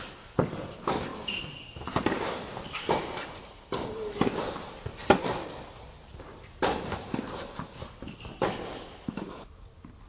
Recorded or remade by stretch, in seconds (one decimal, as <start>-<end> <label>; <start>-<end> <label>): 0.0-10.1 recorded

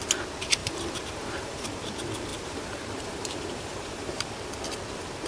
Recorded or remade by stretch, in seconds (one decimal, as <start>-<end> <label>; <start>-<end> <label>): 0.0-0.6 recorded; 0.6-1.6 remade; 1.6-2.3 recorded; 2.3-4.3 remade; 4.3-5.3 recorded